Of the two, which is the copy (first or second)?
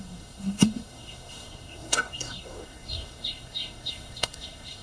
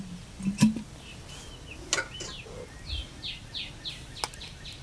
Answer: first